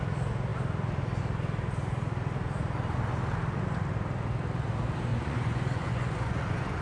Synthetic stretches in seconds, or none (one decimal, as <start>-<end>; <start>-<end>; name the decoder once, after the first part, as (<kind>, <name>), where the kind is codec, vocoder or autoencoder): 5.1-6.8 (vocoder, Vocos)